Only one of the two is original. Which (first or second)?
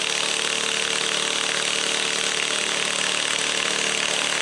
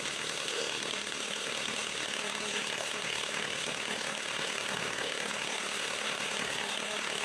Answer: first